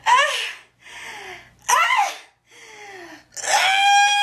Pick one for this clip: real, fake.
real